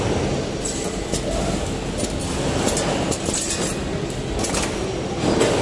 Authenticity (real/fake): real